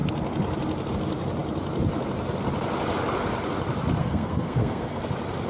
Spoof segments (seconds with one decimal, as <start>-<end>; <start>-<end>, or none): 4.0-5.0